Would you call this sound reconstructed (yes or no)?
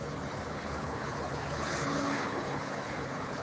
yes